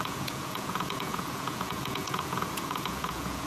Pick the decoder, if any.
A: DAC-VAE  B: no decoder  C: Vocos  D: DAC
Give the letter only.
C